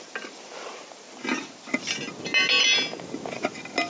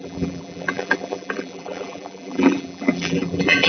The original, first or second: first